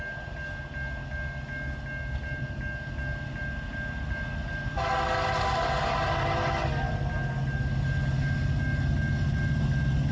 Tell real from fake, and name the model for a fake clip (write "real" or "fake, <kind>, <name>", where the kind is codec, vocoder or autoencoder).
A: real